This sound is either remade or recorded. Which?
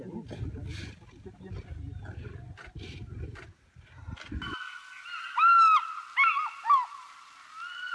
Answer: recorded